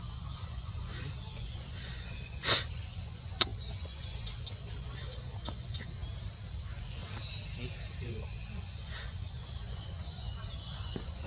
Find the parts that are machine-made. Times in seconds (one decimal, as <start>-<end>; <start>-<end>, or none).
0.0-6.0; 6.6-7.0; 8.0-11.3